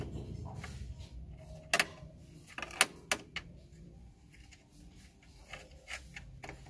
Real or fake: real